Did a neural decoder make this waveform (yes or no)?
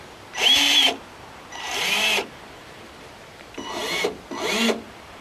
yes